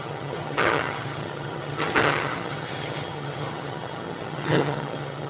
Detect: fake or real fake